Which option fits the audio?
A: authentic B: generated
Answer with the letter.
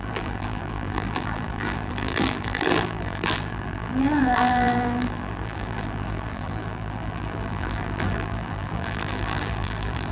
B